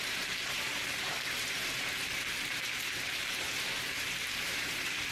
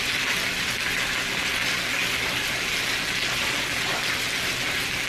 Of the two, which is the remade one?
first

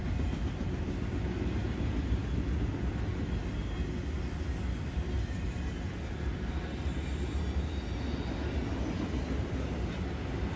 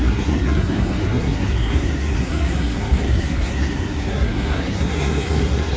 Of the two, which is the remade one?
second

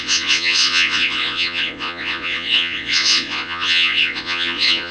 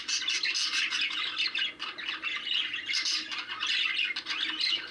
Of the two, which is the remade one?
first